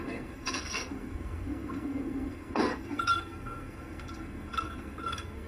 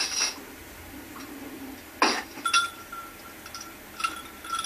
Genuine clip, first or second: second